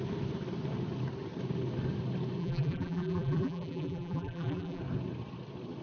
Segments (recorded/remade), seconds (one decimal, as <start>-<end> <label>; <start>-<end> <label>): 0.0-2.4 recorded; 2.4-4.8 remade; 4.8-5.8 recorded